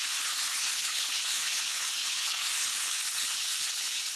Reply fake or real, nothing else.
fake